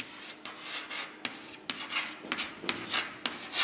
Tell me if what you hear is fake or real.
real